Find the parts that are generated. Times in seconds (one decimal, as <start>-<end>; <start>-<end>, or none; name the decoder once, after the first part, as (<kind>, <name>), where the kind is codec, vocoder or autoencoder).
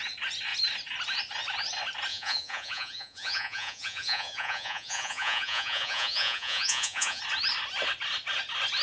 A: 2.1-7.2 (vocoder, Vocos)